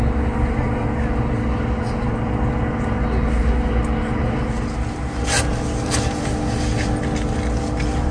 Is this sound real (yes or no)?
yes